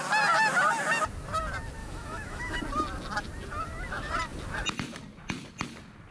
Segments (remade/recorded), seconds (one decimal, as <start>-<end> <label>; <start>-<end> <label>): 0.0-1.8 recorded; 1.8-2.6 remade; 2.6-6.1 recorded